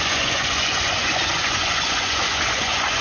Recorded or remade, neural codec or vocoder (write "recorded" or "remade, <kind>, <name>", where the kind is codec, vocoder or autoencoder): remade, vocoder, Vocos